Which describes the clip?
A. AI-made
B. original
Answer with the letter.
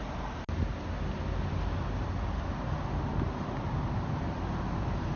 B